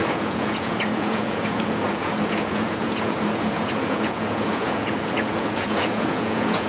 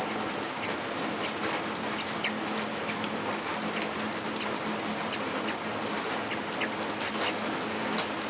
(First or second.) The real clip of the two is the second